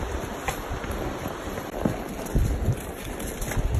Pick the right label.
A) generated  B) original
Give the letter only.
B